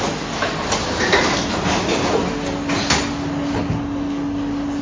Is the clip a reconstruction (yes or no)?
no